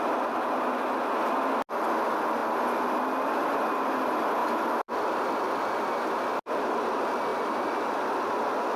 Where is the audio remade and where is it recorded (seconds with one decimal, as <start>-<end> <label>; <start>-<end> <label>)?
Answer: 0.0-2.4 recorded; 2.4-3.3 remade; 3.3-4.4 recorded; 4.4-6.1 remade; 6.1-7.3 recorded; 7.3-7.9 remade; 7.9-8.8 recorded

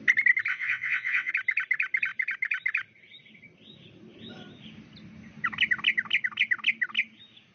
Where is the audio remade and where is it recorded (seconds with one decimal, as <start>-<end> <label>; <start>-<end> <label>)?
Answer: 0.0-0.5 recorded; 0.5-1.3 remade; 1.3-7.5 recorded